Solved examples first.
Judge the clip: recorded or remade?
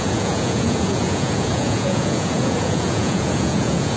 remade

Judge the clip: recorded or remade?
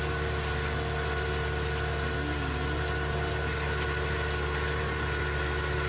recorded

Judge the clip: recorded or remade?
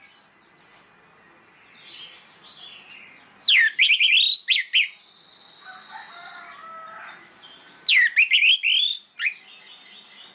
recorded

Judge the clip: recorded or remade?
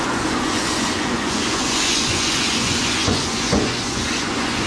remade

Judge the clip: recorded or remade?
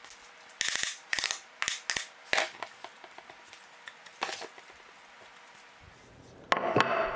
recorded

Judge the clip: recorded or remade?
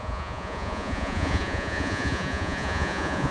remade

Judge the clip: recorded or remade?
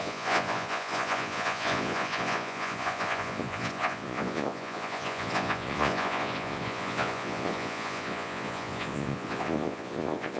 remade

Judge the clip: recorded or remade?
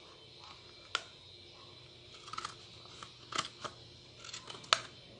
recorded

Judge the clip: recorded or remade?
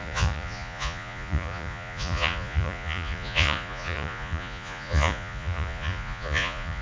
remade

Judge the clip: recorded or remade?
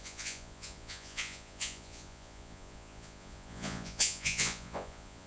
remade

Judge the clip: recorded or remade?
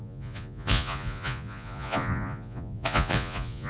remade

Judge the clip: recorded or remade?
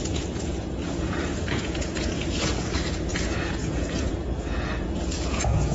remade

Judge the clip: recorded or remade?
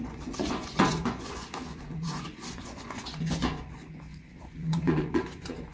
remade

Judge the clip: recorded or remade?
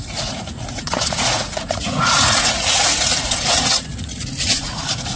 remade